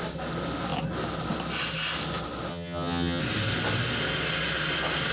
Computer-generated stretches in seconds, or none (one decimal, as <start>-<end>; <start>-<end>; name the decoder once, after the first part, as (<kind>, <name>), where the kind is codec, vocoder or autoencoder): 2.5-3.2 (vocoder, HiFi-GAN)